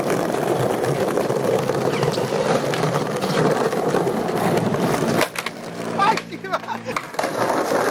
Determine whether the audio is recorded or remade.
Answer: remade